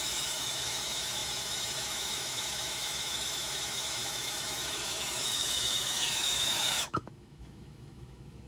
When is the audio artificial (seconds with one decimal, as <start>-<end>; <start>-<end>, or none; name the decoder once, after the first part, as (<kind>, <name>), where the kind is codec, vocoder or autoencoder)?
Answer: 0.0-8.5 (autoencoder, DAC-VAE)